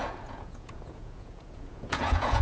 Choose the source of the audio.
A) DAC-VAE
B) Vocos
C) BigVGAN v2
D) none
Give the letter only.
B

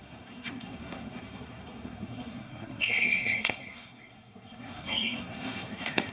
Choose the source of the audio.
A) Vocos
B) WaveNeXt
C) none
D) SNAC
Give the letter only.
D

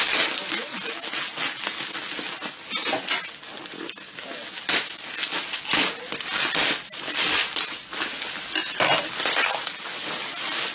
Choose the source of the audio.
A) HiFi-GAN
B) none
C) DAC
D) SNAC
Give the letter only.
B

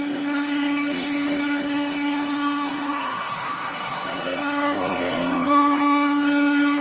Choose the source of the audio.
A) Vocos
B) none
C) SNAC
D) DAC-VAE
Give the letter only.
C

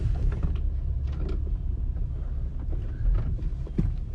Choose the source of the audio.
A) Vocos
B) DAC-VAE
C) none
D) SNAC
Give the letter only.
C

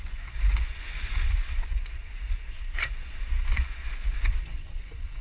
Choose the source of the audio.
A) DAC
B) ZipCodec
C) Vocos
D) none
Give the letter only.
C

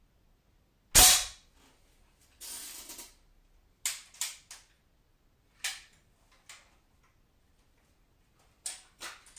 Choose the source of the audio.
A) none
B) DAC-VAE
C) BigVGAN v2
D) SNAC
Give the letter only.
A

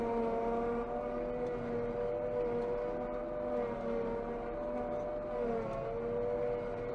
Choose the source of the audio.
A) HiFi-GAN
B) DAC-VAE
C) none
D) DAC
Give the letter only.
C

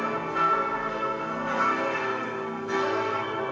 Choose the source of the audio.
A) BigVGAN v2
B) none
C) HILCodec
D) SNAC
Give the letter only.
D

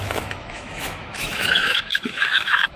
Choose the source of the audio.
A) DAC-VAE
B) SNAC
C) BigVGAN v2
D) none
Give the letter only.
A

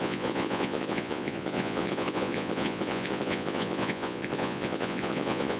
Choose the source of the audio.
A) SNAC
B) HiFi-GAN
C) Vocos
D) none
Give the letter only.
C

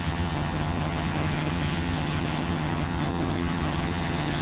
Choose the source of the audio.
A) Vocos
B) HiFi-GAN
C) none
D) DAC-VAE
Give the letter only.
B